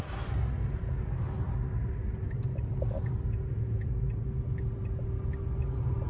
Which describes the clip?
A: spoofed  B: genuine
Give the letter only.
B